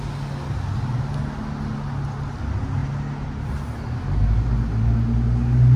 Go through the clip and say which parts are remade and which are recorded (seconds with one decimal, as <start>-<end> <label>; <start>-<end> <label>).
0.0-5.8 recorded

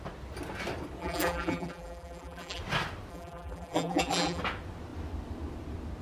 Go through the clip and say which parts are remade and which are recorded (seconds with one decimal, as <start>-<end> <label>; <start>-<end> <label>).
0.0-1.0 recorded; 1.0-2.6 remade; 2.6-3.1 recorded; 3.1-4.4 remade; 4.4-6.0 recorded

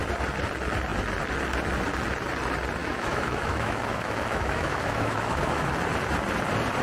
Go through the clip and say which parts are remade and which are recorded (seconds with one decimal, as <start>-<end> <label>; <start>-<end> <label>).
0.0-2.8 recorded; 2.8-5.7 remade; 5.7-6.8 recorded

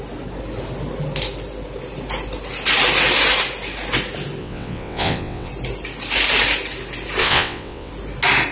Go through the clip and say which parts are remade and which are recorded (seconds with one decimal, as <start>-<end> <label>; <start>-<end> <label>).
0.0-4.4 recorded; 4.4-5.5 remade; 5.5-7.2 recorded; 7.2-7.9 remade; 7.9-8.5 recorded